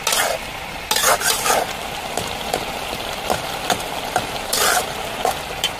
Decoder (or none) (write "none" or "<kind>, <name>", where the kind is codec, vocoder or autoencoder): none